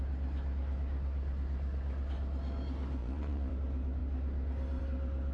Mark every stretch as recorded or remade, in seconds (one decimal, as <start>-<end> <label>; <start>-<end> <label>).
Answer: 0.0-3.0 recorded; 3.0-3.5 remade; 3.5-5.3 recorded